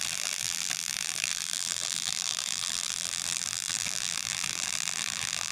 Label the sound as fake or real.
fake